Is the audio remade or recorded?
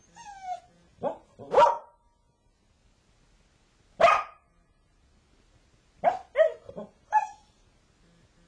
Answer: recorded